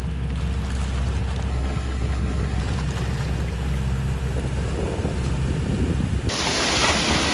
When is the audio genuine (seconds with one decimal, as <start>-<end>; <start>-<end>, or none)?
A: 0.0-1.5; 2.6-7.3